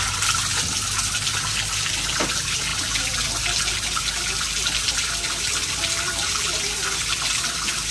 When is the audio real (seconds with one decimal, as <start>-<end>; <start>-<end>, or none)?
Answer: 0.0-2.7; 3.4-7.9